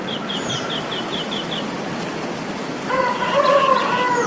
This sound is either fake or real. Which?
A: real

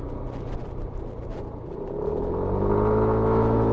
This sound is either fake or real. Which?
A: real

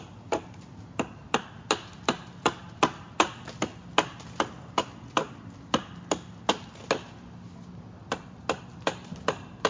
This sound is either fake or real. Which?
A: real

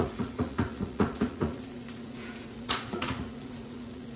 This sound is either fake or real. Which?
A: fake